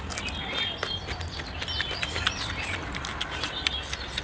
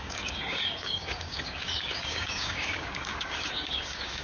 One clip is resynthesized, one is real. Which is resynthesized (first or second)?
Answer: second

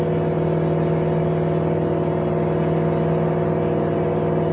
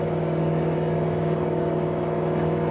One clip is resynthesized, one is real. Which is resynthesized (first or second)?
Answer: second